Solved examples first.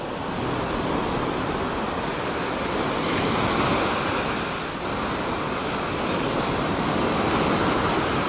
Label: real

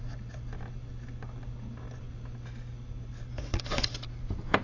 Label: real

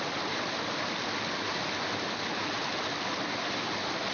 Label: real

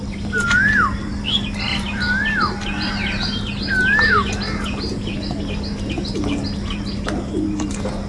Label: real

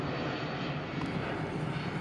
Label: real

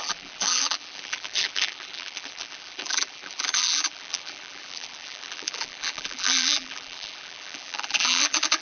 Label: fake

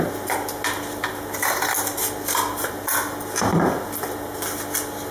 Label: real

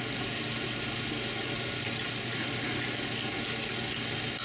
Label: real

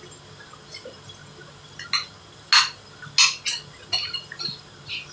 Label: real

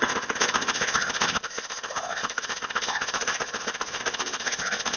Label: fake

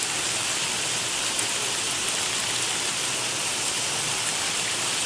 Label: real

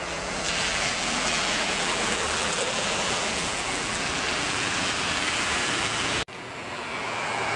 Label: fake